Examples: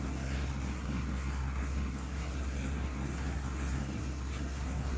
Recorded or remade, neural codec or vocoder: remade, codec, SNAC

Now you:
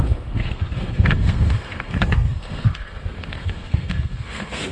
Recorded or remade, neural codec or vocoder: remade, codec, SNAC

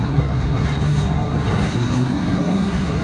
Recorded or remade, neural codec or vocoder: remade, codec, SNAC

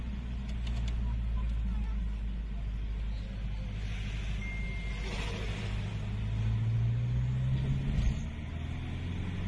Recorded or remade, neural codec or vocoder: recorded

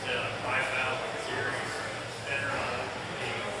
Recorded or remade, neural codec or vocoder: recorded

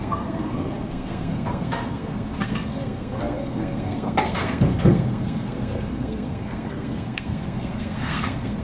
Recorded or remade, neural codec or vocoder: remade, codec, SNAC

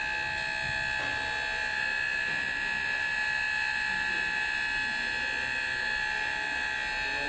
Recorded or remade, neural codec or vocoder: recorded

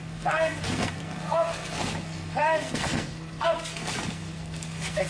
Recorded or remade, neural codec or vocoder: remade, codec, SNAC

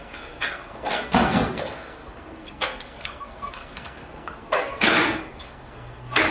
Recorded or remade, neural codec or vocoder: remade, codec, SNAC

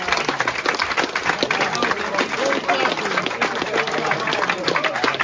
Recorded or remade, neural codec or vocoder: recorded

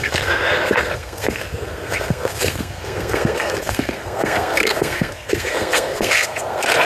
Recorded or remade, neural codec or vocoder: remade, codec, SNAC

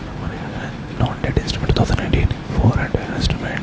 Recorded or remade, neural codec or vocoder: recorded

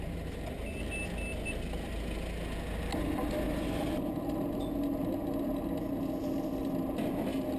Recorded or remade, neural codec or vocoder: recorded